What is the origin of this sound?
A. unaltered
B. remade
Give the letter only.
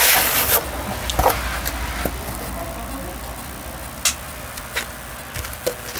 A